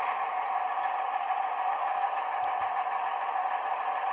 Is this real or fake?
real